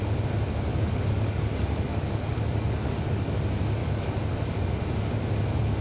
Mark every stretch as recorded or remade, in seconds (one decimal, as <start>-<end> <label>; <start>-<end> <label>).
0.0-0.7 recorded; 0.7-3.3 remade; 3.3-3.8 recorded; 3.8-4.6 remade; 4.6-5.8 recorded